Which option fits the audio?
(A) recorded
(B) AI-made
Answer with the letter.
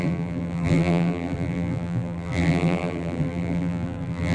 B